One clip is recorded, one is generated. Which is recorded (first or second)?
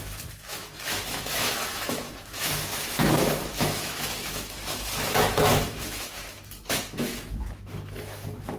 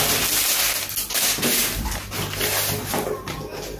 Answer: second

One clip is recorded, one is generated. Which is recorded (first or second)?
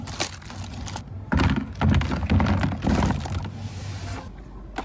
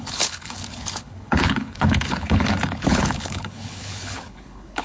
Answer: first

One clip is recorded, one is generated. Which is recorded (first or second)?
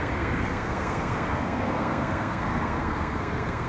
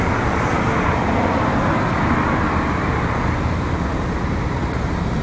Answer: second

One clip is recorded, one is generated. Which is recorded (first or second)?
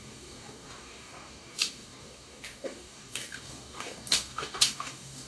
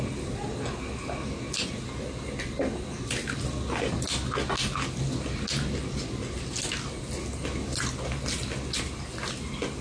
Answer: second